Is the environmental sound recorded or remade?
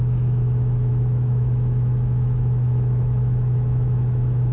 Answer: remade